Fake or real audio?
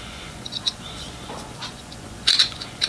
fake